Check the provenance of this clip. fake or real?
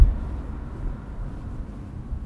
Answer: real